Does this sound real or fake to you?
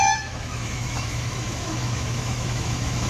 fake